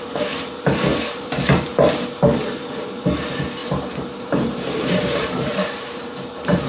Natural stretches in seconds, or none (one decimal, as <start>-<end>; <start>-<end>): 0.0-0.9; 1.6-3.6